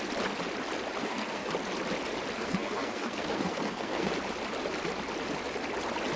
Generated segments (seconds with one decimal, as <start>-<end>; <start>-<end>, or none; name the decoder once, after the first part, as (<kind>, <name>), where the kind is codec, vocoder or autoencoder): 1.0-1.5 (codec, SNAC); 2.4-4.1